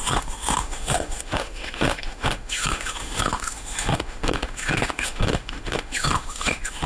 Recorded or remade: remade